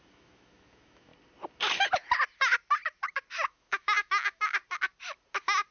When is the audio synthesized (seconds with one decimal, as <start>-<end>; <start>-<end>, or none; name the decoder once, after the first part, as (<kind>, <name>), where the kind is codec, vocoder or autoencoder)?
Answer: 0.0-1.1 (autoencoder, DAC-VAE); 3.3-4.6

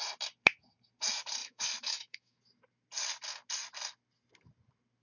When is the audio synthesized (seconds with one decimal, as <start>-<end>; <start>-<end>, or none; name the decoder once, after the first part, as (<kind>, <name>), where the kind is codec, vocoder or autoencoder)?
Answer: 1.4-2.4 (autoencoder, DAC-VAE)

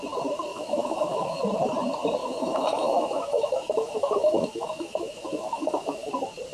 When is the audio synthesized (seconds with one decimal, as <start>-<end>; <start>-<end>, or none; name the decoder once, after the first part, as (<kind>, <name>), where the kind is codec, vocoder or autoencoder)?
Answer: 0.5-1.4 (autoencoder, DAC-VAE); 2.2-6.1

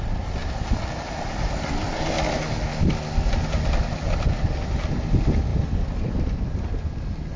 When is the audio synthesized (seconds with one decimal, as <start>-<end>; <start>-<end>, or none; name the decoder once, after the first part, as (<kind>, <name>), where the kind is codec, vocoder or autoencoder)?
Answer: none